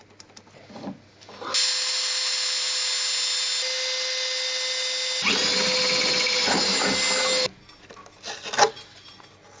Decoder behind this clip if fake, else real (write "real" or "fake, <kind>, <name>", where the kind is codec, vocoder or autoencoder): real